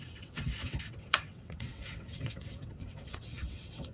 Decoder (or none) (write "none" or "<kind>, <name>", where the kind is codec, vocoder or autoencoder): vocoder, WaveNeXt